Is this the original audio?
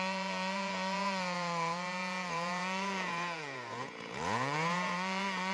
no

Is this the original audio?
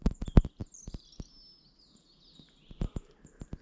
yes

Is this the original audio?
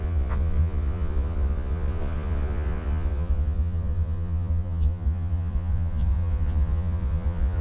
no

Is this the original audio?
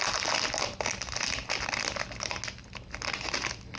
yes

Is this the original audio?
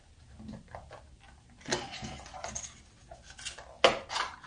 yes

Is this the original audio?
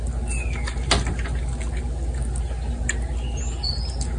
yes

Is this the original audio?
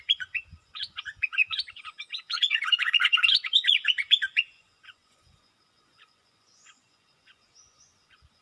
no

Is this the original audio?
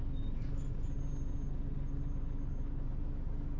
yes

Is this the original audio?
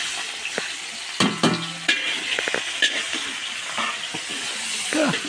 yes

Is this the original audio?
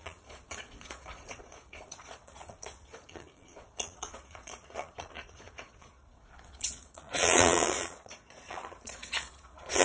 no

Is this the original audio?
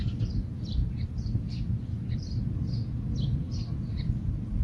yes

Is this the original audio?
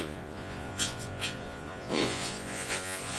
no